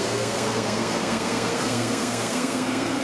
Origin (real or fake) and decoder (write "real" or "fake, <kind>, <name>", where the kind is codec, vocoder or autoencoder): fake, codec, SNAC